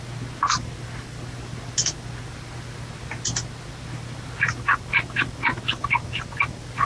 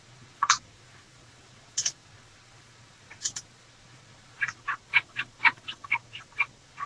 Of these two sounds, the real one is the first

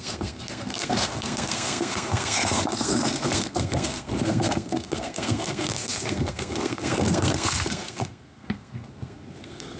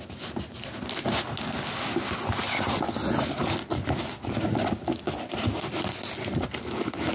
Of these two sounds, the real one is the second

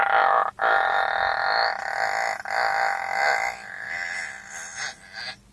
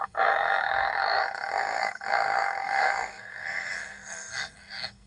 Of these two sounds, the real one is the first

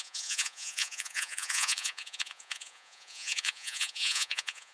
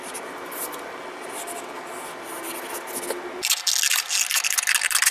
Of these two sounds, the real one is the second